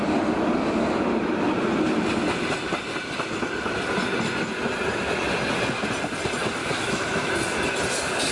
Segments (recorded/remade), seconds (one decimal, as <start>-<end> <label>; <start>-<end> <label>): 0.0-6.6 recorded; 6.6-7.3 remade; 7.3-8.3 recorded